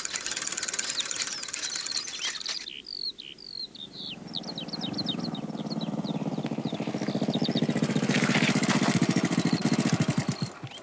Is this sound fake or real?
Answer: real